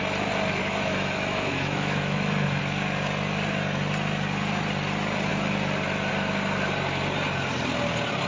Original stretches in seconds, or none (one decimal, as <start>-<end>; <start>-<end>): 0.0-0.6; 2.6-8.3